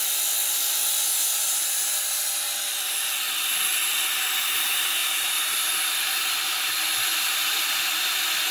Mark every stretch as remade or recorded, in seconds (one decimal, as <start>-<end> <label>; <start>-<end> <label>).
0.0-5.0 recorded; 5.0-6.3 remade; 6.3-7.1 recorded; 7.1-7.8 remade; 7.8-8.5 recorded